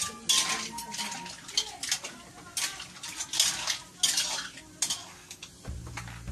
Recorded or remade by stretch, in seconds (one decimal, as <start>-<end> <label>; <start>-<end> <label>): 0.0-5.0 recorded; 5.0-5.5 remade; 5.5-6.3 recorded